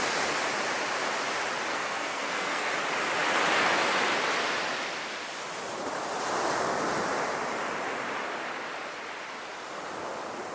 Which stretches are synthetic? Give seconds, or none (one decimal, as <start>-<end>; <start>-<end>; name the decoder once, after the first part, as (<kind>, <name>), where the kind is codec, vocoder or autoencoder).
1.7-2.7 (codec, SNAC)